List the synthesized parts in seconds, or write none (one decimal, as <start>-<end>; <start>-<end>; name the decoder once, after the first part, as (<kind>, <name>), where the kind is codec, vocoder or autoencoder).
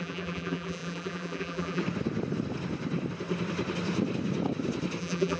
0.0-1.8 (vocoder, BigVGAN v2); 5.0-5.4